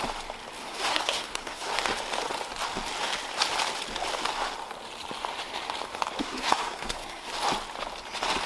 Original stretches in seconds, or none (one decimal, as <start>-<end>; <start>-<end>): 0.0-0.6; 1.7-6.2; 7.3-8.5